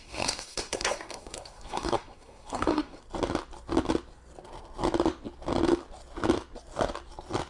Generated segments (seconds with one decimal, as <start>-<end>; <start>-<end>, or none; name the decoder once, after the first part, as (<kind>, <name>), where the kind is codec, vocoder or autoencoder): 0.0-3.0 (codec, SNAC)